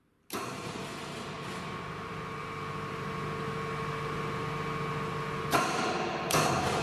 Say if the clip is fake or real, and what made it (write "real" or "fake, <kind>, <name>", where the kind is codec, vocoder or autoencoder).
real